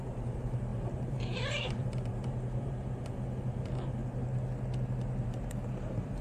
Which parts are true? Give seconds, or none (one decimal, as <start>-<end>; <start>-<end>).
4.0-5.2